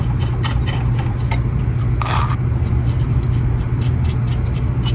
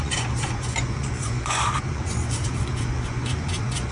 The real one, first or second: first